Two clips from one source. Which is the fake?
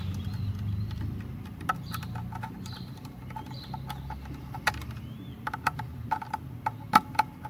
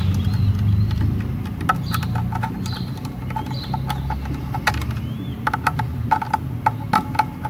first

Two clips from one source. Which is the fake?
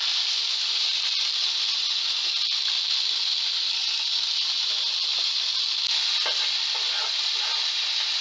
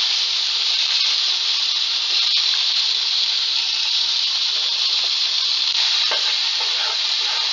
second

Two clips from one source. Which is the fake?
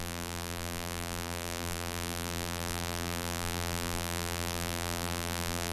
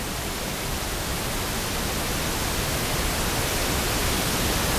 first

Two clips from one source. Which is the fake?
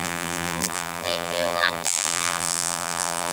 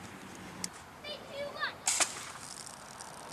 first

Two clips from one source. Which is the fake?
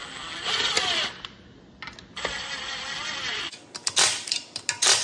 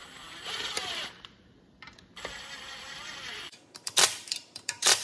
second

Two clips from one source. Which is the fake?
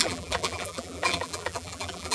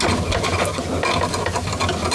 first